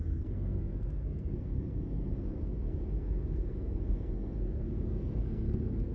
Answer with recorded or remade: remade